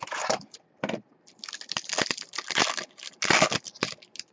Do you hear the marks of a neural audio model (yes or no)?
no